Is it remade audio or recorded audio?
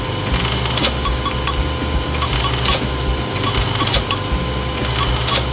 recorded